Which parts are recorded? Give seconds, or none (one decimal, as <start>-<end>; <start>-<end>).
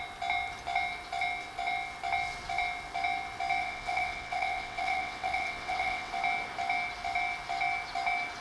0.0-3.6; 6.1-8.4